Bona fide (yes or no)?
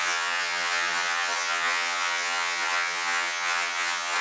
no